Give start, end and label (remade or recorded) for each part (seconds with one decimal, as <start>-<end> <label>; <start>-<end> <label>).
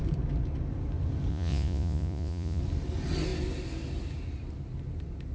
0.0-1.3 recorded; 1.3-2.6 remade; 2.6-5.3 recorded